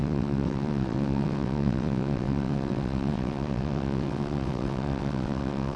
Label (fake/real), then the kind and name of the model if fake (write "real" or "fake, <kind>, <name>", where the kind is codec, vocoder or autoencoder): fake, vocoder, WaveNeXt